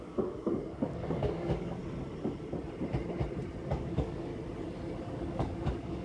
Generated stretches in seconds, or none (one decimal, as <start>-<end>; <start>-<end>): 0.0-1.8; 3.7-4.3; 5.0-6.0